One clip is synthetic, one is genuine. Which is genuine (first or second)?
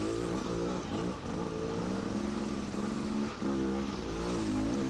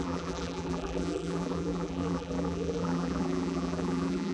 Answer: first